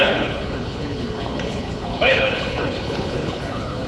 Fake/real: fake